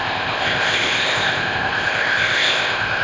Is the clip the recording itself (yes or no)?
no